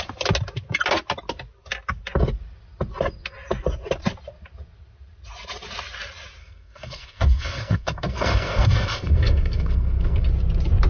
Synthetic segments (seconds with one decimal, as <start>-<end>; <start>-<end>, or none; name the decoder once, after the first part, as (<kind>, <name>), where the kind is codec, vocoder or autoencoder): 6.4-10.3 (codec, SNAC)